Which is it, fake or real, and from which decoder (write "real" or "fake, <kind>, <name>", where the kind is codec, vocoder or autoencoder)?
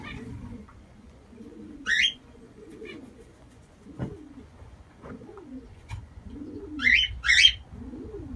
fake, vocoder, Vocos